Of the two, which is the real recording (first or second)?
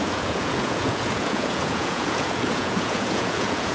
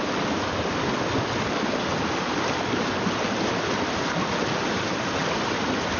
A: second